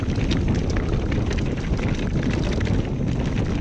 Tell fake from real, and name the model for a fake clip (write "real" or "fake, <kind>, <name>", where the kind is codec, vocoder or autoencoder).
real